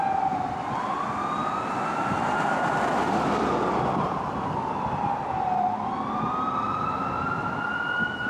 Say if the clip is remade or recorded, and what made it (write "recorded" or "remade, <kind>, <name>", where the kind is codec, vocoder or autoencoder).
recorded